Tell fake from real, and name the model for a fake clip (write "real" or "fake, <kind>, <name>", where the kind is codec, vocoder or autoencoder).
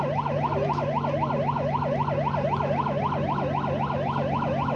real